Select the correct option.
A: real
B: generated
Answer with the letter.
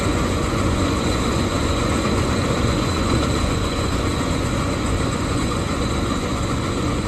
B